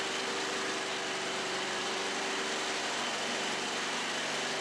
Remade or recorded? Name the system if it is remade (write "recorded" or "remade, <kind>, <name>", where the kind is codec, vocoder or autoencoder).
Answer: recorded